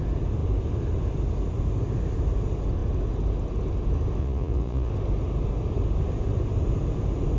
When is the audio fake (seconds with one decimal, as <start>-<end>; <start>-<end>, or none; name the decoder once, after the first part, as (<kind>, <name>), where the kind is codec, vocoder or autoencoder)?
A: 4.2-4.9 (vocoder, Vocos)